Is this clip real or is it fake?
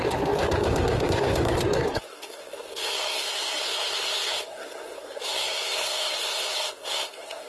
fake